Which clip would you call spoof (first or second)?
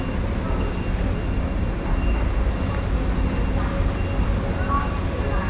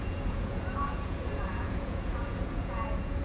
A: second